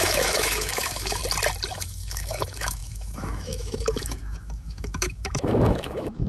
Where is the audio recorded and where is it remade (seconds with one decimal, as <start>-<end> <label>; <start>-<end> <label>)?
0.0-1.2 remade; 1.2-1.7 recorded; 1.7-6.3 remade